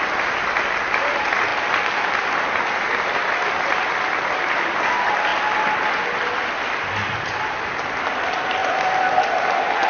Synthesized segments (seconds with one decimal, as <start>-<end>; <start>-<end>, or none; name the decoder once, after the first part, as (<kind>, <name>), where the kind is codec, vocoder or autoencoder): none